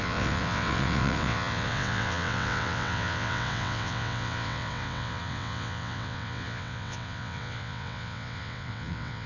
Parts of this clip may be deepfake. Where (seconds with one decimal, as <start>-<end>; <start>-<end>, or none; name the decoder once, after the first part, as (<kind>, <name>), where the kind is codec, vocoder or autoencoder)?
0.0-9.3 (vocoder, WaveNeXt)